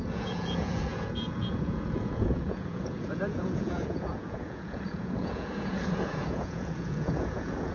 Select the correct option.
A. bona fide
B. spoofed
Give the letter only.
B